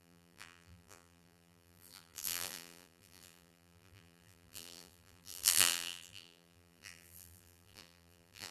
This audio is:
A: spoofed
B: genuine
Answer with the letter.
A